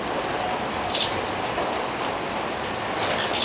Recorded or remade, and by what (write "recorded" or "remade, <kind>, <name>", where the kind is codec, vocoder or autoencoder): recorded